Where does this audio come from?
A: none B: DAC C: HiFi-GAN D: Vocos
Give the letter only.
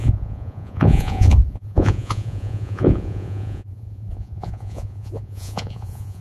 D